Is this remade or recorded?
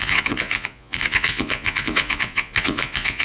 remade